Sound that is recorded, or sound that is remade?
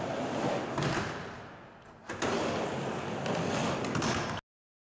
recorded